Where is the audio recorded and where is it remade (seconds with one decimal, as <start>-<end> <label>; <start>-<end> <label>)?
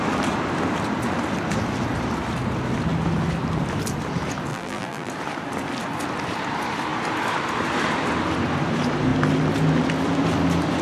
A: 0.0-4.5 recorded; 4.5-5.1 remade; 5.1-10.8 recorded